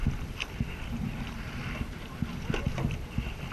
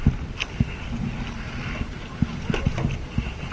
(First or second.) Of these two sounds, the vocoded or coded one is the first